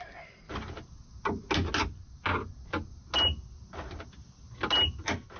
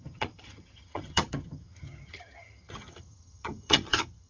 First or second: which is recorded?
first